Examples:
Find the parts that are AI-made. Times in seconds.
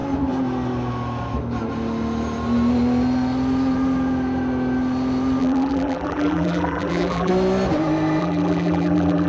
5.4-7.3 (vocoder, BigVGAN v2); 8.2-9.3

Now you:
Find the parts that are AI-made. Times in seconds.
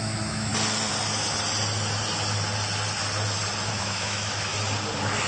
0.0-0.5 (autoencoder, DAC-VAE); 3.7-4.5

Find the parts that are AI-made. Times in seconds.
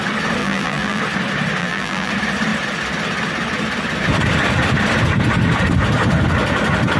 0.4-1.0 (vocoder, BigVGAN v2); 1.6-2.1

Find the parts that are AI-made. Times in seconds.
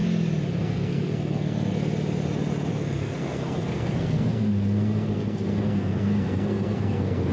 0.6-1.7 (codec, SNAC); 2.7-7.3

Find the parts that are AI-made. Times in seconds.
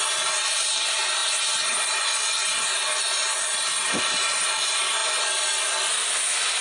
none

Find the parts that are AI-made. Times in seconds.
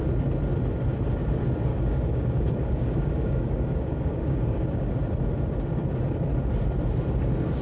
1.7-4.9 (codec, DAC)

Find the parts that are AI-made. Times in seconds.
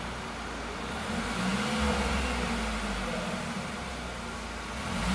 none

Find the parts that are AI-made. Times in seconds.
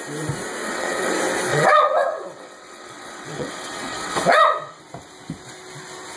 0.6-1.1 (vocoder, WaveNeXt); 1.5-4.8